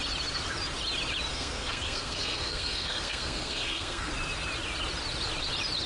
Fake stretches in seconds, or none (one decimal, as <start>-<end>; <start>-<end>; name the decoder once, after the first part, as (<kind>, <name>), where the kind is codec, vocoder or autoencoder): 1.3-4.1 (codec, SNAC)